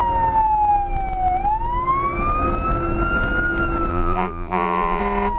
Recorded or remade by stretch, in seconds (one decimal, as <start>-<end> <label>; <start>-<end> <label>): 0.0-3.9 recorded; 3.9-5.0 remade; 5.0-5.4 recorded